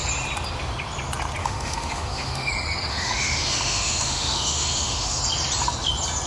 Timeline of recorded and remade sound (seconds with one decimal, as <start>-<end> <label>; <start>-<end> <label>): 0.0-1.4 recorded; 1.4-2.5 remade; 2.5-2.9 recorded; 2.9-5.2 remade; 5.2-6.3 recorded